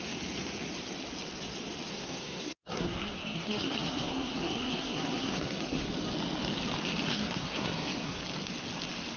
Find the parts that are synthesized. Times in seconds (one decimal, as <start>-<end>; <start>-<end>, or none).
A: 1.9-5.9; 7.1-8.2